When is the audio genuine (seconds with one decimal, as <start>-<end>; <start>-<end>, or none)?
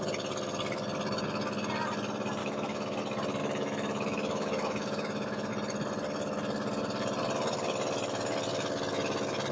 0.0-2.4; 3.0-3.4; 5.5-9.5